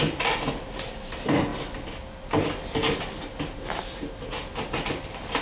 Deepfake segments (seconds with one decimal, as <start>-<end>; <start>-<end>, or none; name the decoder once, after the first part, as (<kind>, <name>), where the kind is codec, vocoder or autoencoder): none